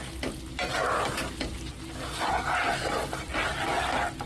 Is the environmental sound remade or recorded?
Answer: recorded